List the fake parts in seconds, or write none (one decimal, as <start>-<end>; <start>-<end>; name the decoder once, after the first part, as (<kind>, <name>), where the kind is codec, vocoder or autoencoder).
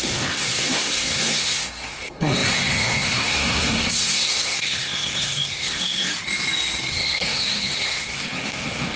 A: 0.0-6.1 (codec, SNAC); 6.9-9.0